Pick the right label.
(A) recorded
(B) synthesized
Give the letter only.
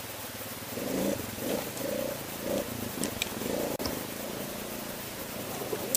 B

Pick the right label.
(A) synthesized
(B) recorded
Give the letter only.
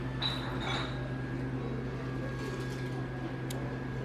B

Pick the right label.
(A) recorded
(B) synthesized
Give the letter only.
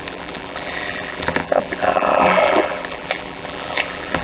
B